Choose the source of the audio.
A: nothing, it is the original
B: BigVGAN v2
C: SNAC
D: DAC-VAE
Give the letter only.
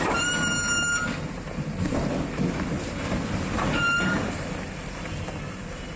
A